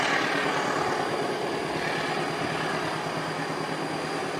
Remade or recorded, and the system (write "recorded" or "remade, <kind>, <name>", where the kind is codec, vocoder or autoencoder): recorded